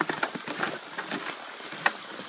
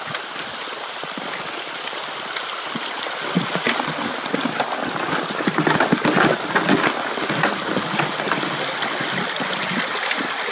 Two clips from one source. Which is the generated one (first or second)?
first